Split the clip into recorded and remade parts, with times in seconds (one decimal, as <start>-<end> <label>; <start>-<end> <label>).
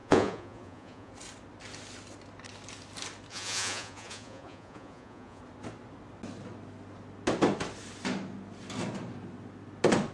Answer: 0.0-1.1 remade; 1.1-3.3 recorded; 3.3-5.4 remade; 5.4-10.1 recorded